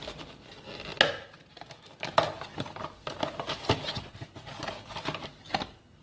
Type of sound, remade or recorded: recorded